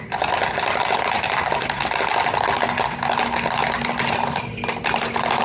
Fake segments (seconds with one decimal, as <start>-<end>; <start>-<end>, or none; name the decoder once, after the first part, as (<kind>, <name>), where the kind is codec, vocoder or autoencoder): none